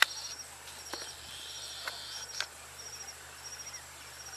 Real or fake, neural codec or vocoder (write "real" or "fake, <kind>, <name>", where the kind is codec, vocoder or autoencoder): real